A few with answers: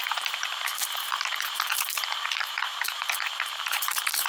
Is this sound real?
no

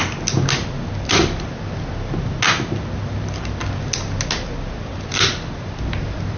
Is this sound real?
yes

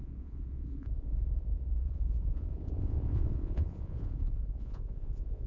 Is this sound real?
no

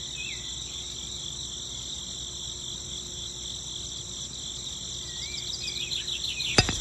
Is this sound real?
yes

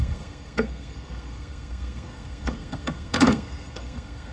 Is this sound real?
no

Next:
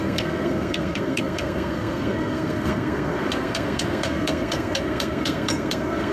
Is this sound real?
no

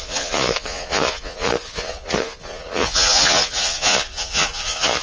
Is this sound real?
no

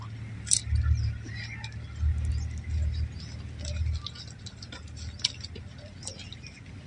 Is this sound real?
yes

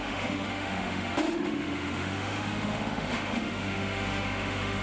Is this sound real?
no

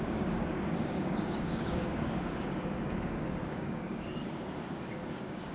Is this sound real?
no